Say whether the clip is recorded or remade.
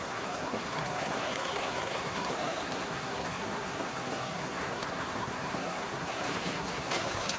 remade